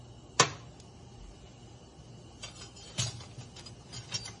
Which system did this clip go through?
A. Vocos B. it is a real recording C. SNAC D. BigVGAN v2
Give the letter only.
B